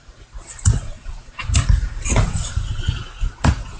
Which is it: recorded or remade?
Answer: remade